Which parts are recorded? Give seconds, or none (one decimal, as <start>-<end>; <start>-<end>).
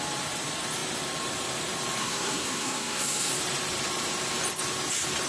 0.0-2.0; 3.3-5.3